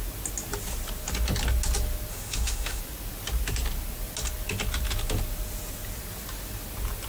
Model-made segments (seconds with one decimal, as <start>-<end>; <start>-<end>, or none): 2.1-2.8